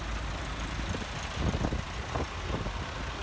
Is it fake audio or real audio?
real